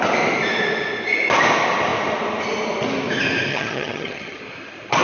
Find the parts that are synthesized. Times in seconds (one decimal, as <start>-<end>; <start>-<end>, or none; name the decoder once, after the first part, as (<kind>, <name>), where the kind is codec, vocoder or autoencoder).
3.5-4.4 (vocoder, HiFi-GAN)